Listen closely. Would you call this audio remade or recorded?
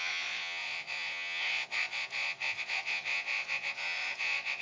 remade